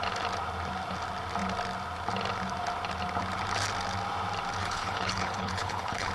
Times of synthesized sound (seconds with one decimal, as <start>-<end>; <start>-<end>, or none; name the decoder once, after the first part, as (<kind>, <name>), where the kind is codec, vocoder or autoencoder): 4.6-6.1 (codec, HILCodec)